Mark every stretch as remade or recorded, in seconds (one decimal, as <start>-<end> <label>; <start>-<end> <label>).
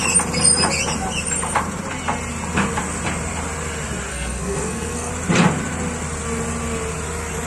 0.0-4.1 recorded; 4.1-5.1 remade; 5.1-7.5 recorded